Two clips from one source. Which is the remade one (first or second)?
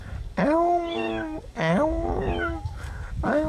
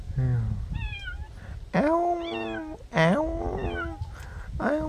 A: first